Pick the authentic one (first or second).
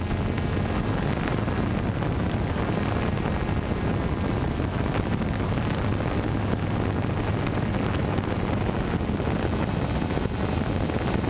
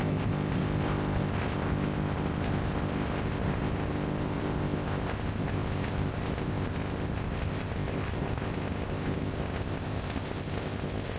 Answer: first